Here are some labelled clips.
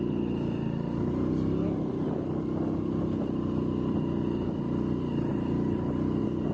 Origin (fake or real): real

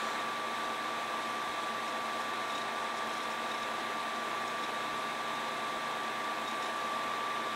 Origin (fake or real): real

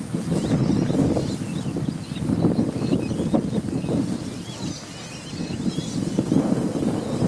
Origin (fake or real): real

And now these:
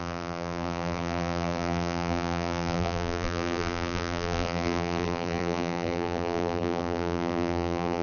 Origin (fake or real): fake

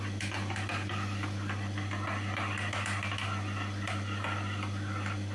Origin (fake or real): real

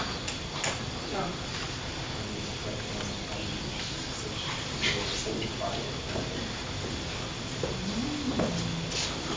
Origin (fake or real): real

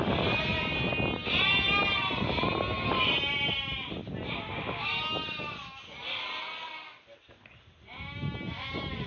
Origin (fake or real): real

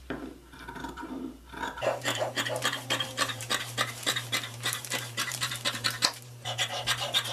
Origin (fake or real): fake